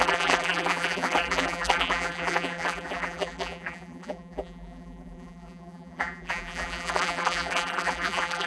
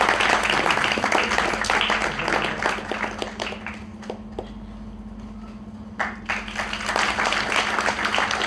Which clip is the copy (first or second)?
first